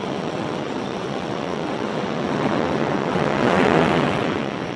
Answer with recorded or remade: remade